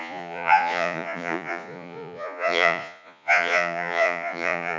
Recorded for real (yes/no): no